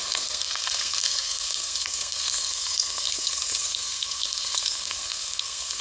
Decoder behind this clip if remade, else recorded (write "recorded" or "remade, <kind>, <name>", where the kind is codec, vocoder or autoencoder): remade, codec, SNAC